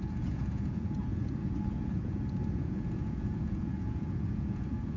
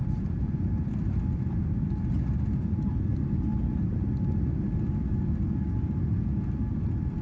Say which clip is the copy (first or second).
first